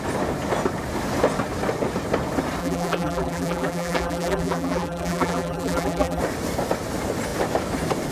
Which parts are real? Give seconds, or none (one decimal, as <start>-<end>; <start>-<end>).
0.0-2.6; 6.2-8.1

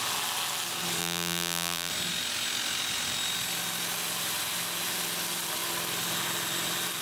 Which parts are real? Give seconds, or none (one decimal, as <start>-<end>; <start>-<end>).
0.0-1.0; 1.9-7.0

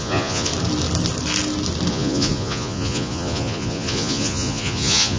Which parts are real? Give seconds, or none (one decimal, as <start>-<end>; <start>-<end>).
0.5-1.9

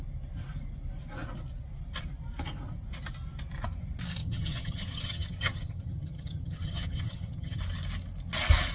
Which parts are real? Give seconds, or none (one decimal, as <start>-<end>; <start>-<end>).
0.0-4.2; 7.6-8.7

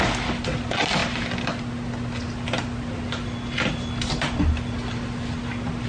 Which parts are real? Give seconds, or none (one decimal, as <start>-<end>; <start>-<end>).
0.0-5.9

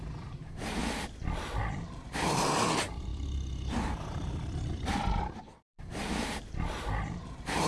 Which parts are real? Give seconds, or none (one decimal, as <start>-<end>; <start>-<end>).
0.8-1.6; 3.1-5.4